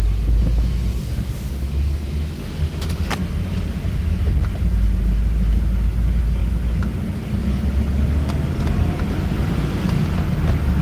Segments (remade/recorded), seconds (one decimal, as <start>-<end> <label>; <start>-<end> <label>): 0.0-1.0 recorded; 1.0-1.5 remade; 1.5-2.4 recorded; 2.4-3.1 remade; 3.1-10.8 recorded